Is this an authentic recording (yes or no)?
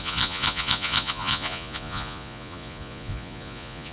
no